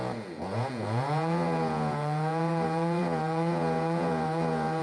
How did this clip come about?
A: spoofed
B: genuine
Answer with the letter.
A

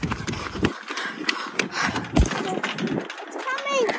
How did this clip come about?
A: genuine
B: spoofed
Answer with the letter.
A